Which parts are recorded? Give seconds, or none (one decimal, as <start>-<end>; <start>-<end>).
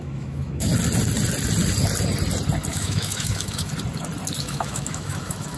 0.7-2.7; 3.7-4.4